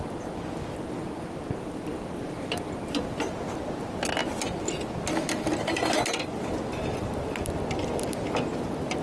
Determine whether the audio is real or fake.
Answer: real